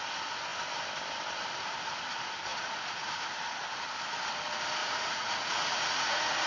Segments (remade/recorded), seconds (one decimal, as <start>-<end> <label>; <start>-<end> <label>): 0.0-2.5 recorded; 2.5-3.1 remade; 3.1-4.8 recorded; 4.8-6.5 remade